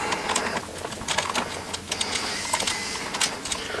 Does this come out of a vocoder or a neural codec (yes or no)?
no